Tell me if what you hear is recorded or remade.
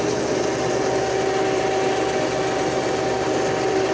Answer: recorded